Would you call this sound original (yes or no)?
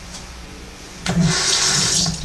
no